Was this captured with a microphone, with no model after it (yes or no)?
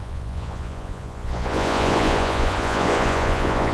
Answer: no